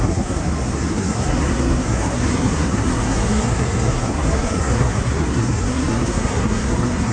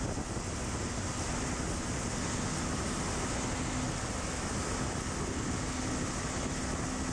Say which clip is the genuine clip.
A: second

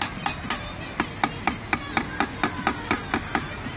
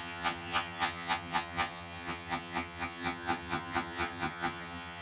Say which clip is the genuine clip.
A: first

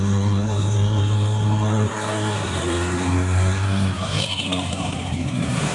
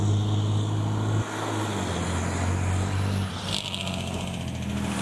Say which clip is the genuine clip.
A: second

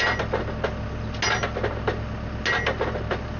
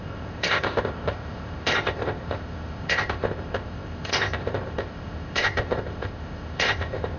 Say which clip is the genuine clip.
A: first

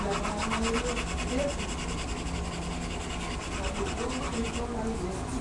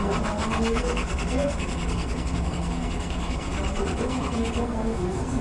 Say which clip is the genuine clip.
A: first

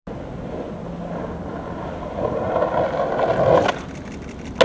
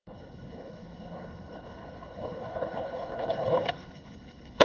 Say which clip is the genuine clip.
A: first